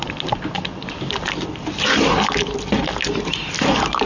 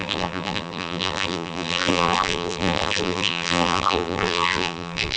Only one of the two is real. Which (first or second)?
first